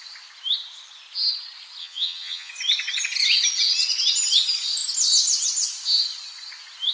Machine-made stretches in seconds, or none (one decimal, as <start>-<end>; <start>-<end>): 1.8-2.5